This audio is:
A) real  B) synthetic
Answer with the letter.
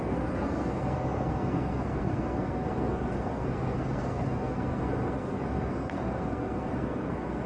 B